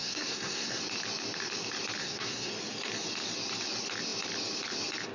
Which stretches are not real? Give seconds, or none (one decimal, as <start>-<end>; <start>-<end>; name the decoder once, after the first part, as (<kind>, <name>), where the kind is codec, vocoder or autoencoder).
0.0-0.8 (codec, SNAC); 2.0-2.5